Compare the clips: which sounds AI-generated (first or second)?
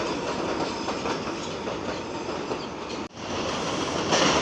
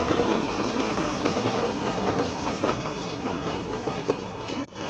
second